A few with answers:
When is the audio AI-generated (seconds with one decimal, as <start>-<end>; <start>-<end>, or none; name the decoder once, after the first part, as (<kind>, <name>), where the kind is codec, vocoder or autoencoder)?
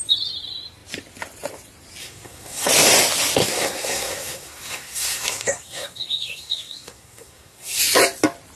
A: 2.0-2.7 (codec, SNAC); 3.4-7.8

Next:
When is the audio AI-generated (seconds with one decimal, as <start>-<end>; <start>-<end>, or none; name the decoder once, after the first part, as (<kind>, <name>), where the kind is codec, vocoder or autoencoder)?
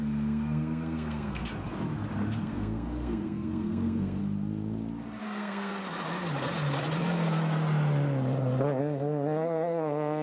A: 0.0-1.4 (codec, SNAC); 2.4-4.2; 5.2-5.7; 8.8-10.2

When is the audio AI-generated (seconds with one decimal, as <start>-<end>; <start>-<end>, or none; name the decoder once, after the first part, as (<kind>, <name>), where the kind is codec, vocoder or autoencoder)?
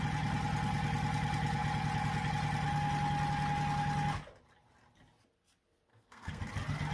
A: 5.9-6.4 (codec, SNAC)